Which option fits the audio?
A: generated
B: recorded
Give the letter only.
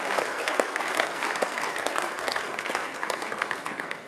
A